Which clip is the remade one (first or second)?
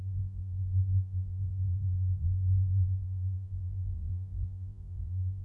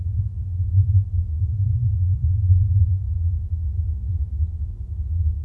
first